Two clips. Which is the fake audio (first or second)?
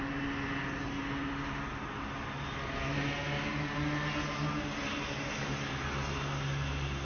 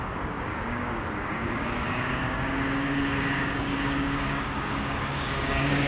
second